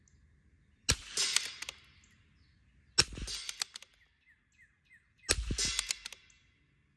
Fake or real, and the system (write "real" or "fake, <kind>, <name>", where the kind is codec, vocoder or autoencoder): real